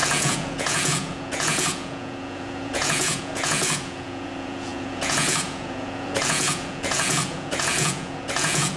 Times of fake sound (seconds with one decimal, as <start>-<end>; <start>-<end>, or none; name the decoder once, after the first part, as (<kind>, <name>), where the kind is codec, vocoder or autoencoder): 0.0-8.8 (vocoder, Vocos)